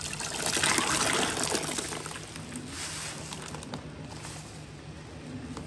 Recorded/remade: recorded